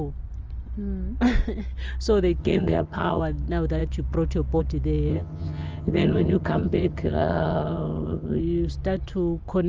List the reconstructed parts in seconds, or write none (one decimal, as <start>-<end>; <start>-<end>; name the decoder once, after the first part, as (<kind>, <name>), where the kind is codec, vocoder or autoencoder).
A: 2.4-3.2 (vocoder, HiFi-GAN); 5.1-8.4